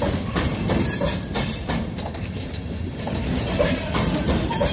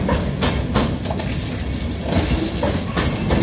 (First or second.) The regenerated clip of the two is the first